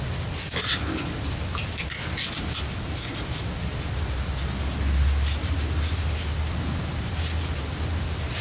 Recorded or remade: recorded